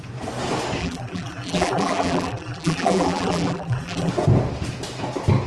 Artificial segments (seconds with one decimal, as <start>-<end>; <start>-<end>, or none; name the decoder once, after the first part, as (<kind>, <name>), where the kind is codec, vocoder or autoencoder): 0.8-4.1 (vocoder, BigVGAN v2)

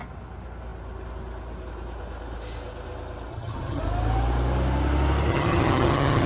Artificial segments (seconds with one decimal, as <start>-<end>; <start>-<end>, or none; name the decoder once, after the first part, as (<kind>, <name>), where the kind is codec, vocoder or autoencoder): 3.3-3.8 (vocoder, HiFi-GAN); 5.3-6.3

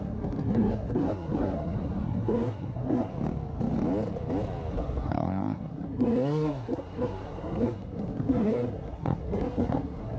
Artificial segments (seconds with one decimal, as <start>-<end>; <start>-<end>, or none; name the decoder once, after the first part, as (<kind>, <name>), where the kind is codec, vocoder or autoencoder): 0.0-3.1 (codec, SNAC); 4.7-10.2

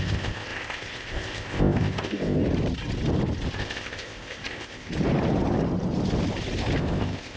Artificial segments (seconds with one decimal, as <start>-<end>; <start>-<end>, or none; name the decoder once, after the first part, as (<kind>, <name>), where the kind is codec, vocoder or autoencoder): 0.0-2.4 (codec, ZipCodec); 3.5-4.9; 6.8-7.4

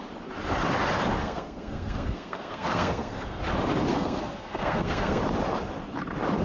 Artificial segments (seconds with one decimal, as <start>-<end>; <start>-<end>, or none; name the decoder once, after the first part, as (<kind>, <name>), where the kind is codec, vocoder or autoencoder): 1.2-3.4 (codec, SNAC); 3.9-5.2

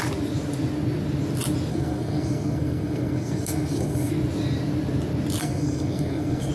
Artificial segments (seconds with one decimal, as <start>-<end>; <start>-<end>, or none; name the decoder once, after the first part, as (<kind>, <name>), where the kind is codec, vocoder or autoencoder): 1.7-4.1 (codec, SNAC); 5.4-6.5

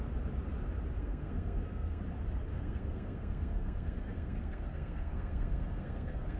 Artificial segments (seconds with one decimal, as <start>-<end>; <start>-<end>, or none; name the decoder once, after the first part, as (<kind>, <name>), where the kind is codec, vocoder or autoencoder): 1.0-2.0 (codec, SNAC); 2.5-6.4

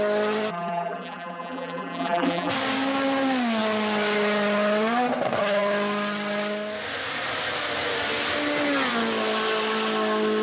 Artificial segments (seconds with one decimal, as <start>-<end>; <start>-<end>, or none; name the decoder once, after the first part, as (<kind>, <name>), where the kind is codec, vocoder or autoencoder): 0.5-2.5 (vocoder, BigVGAN v2)